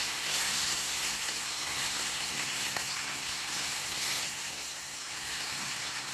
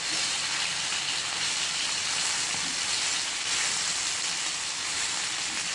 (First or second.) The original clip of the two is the second